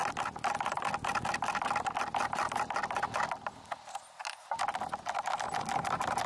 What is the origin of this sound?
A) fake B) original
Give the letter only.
B